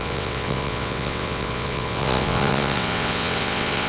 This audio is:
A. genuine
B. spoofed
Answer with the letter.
B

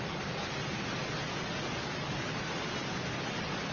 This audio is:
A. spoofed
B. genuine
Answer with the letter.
B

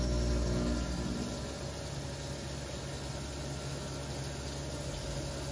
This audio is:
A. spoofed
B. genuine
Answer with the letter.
B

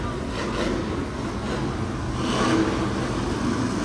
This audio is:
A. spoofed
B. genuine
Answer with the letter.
B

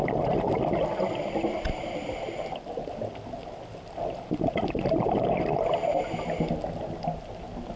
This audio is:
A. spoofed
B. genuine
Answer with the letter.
B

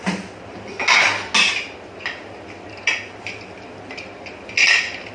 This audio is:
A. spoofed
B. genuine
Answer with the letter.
B